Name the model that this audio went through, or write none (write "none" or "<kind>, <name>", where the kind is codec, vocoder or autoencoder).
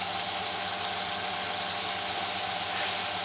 none